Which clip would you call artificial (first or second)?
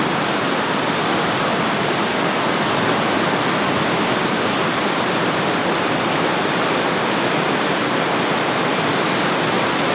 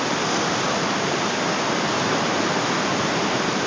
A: second